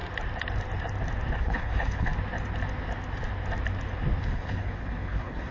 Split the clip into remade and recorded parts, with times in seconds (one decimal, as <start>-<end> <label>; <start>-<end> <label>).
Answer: 0.0-1.4 recorded; 1.4-2.1 remade; 2.1-4.2 recorded; 4.2-5.5 remade